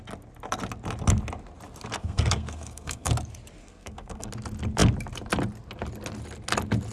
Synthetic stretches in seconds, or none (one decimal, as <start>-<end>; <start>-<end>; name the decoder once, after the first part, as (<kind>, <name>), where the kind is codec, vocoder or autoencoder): 2.0-3.1 (codec, SNAC); 3.6-4.3